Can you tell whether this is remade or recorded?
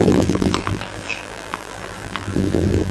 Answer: remade